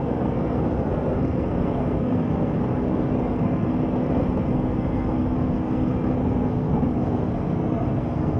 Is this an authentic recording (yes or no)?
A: no